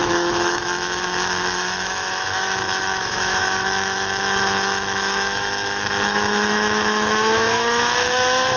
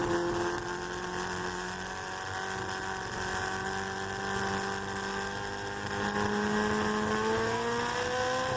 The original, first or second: second